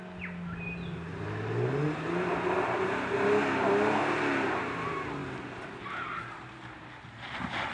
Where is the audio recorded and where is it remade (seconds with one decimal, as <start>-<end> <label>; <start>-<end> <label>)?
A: 0.0-7.7 recorded